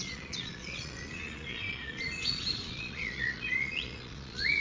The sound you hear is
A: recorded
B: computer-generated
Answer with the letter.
B